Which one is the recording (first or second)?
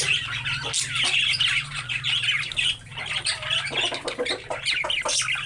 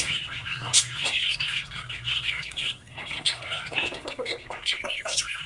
first